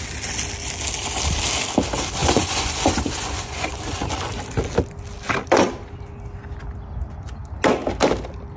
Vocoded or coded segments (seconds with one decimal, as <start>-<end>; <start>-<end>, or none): 2.2-3.8